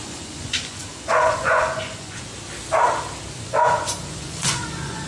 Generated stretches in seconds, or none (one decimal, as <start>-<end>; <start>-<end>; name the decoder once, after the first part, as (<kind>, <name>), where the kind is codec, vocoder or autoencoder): 0.0-2.3 (vocoder, Vocos); 3.4-5.1